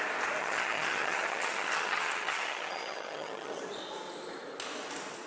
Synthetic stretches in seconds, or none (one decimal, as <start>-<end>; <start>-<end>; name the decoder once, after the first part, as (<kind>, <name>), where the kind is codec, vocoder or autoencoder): 0.4-3.6 (vocoder, HiFi-GAN)